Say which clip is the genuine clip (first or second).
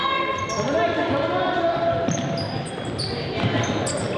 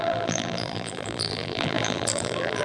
first